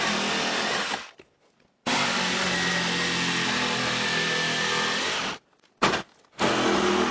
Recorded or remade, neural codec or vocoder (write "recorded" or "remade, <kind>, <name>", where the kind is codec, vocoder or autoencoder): recorded